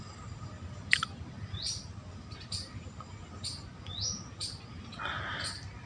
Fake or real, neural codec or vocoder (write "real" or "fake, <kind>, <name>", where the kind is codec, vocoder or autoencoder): real